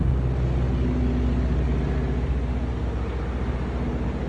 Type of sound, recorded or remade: recorded